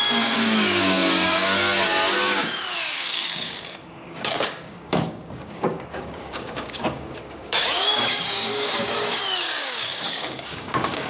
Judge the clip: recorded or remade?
remade